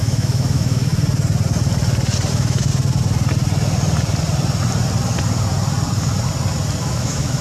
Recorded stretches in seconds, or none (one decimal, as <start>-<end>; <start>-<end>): 0.9-2.3; 2.7-6.8